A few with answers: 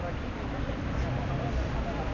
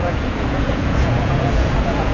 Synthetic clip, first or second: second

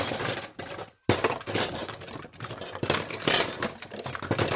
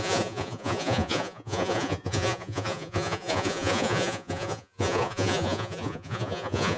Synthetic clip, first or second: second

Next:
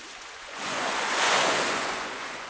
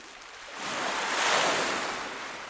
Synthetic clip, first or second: first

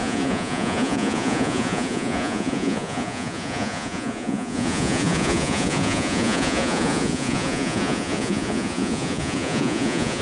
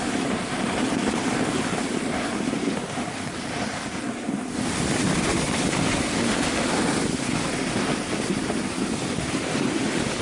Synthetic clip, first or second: first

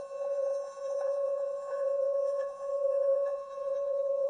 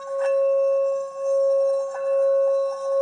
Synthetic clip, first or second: first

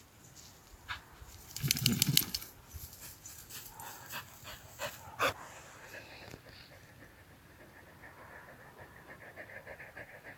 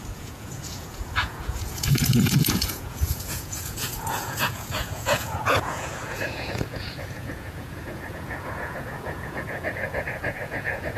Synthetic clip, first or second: second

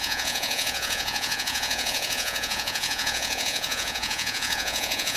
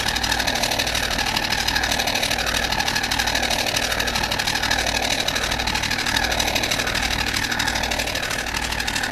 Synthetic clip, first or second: first